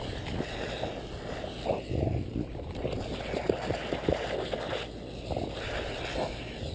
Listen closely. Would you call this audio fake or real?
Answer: real